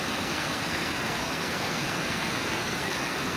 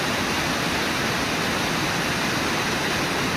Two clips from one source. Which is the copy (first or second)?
first